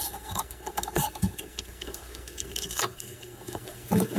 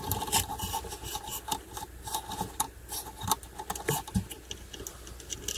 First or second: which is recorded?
second